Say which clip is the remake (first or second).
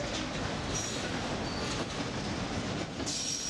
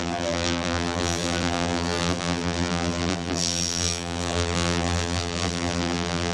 second